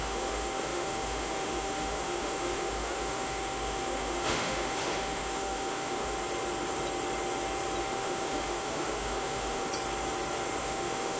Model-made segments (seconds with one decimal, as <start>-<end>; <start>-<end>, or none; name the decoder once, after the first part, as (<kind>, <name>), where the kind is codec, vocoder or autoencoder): 0.0-6.2 (autoencoder, DAC-VAE); 7.8-9.7; 10.6-11.2